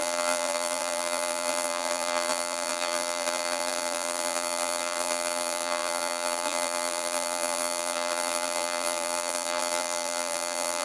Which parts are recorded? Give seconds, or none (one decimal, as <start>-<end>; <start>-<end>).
none